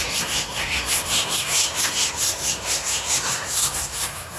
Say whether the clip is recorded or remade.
remade